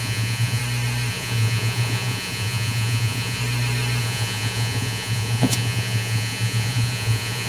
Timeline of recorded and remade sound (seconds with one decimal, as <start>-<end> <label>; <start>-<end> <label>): 0.0-0.6 remade; 0.6-1.1 recorded; 1.1-3.4 remade; 3.4-4.0 recorded; 4.0-7.5 remade